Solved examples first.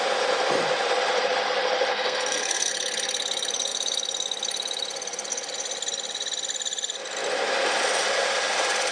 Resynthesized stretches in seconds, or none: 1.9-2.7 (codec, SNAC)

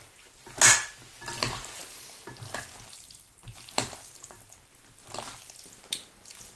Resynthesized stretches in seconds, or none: none